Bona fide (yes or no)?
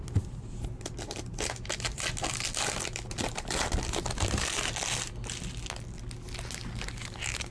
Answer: yes